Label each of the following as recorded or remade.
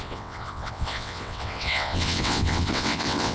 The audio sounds remade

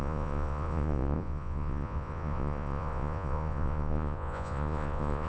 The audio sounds remade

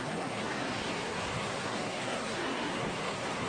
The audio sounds remade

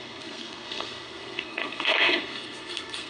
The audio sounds remade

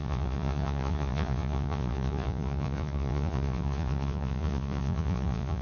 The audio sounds remade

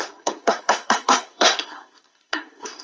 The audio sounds remade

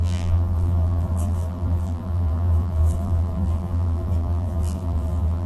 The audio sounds remade